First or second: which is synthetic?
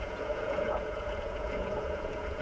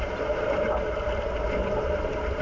first